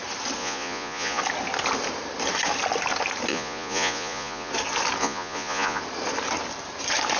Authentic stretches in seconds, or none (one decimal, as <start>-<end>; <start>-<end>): 0.0-0.4; 1.2-3.3; 4.5-5.0; 5.8-7.2